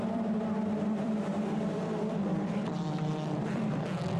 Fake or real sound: fake